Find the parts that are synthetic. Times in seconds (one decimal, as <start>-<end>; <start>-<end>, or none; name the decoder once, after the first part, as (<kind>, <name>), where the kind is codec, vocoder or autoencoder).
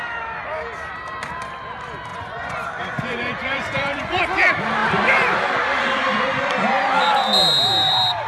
2.1-4.2 (vocoder, Vocos)